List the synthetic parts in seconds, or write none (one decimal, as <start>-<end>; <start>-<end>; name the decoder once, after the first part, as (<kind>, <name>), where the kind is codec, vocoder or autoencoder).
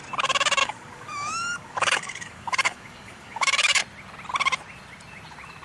0.6-3.8 (codec, DAC)